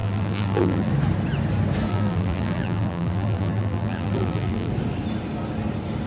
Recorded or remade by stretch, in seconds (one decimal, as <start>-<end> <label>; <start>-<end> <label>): 0.0-0.9 remade; 0.9-1.9 recorded; 1.9-4.7 remade; 4.7-6.1 recorded